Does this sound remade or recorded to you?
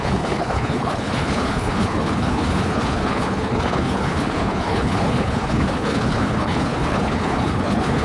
remade